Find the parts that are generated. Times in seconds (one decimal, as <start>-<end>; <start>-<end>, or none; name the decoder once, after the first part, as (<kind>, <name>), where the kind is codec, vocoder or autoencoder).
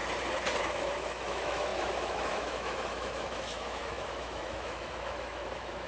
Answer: 0.6-5.9 (autoencoder, DAC-VAE)